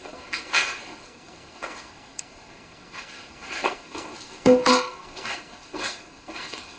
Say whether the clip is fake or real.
fake